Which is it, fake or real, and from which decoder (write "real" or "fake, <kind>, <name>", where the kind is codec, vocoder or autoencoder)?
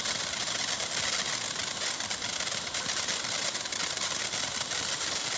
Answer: real